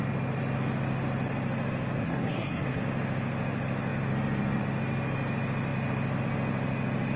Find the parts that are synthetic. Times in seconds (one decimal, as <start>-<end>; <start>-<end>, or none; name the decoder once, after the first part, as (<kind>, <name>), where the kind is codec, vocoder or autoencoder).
2.0-2.8 (codec, SNAC)